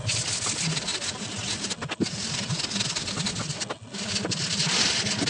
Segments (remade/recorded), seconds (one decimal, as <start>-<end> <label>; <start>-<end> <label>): 0.0-5.3 recorded